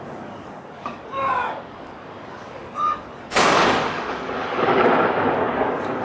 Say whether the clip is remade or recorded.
remade